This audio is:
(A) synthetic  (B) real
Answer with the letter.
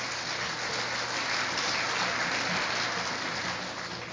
B